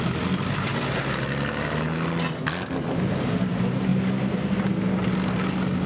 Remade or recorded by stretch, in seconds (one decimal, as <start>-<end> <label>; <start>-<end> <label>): 0.0-5.9 recorded